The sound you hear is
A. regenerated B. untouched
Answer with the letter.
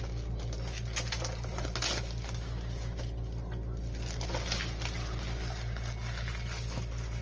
B